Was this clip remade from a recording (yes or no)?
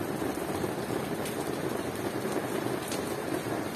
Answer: no